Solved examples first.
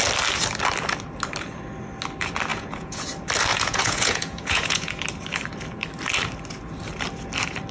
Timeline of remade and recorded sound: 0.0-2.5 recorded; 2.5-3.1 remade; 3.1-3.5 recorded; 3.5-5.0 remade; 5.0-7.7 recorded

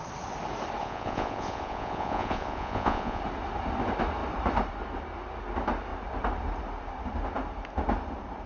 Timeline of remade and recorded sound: 0.0-0.8 recorded; 0.8-3.2 remade; 3.2-8.5 recorded